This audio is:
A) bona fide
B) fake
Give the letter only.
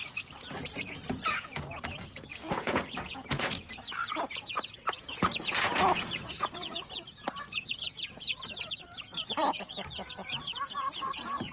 B